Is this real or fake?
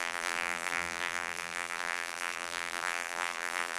fake